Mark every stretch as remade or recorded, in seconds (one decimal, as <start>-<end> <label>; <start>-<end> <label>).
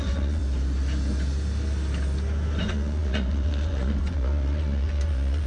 0.0-0.4 remade; 0.4-2.6 recorded; 2.6-5.5 remade